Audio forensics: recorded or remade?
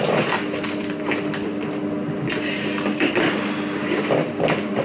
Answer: recorded